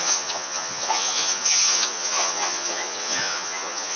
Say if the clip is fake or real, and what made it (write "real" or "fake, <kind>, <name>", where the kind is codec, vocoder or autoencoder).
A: fake, vocoder, Vocos